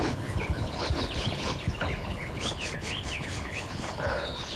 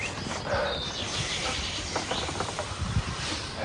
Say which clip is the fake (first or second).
first